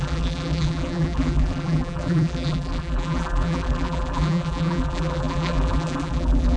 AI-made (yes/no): yes